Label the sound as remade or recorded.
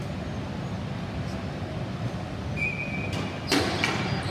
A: recorded